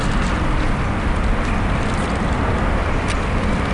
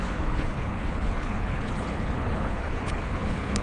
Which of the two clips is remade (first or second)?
second